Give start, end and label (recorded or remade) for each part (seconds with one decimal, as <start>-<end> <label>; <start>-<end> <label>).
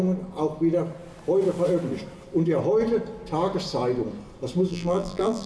0.0-4.7 recorded; 4.7-5.5 remade